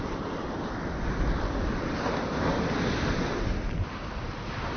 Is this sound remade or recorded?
recorded